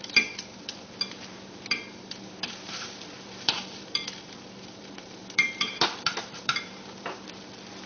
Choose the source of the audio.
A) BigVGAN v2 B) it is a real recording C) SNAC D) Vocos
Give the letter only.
A